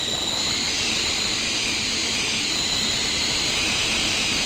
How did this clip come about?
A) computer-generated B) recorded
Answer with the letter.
A